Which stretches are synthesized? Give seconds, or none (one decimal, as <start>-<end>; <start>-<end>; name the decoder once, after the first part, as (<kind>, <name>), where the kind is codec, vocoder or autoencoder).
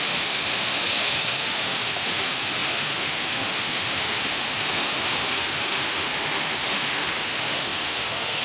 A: 0.0-8.4 (autoencoder, DAC-VAE)